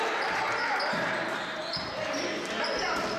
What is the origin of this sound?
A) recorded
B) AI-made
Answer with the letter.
A